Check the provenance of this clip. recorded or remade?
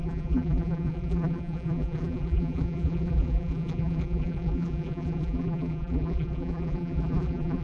remade